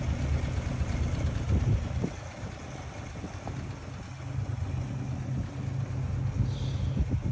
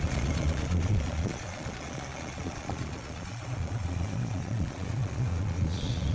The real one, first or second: first